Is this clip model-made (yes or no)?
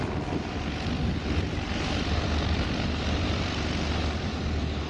no